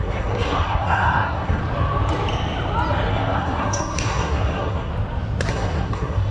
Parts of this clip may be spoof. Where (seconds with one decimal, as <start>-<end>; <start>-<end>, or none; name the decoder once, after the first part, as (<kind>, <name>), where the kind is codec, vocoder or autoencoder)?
0.0-1.6 (codec, SNAC); 3.1-4.9; 5.5-6.3